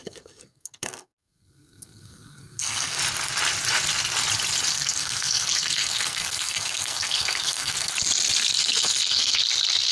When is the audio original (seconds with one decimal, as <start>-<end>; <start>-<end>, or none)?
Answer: 3.0-4.7; 7.9-8.6; 9.4-9.9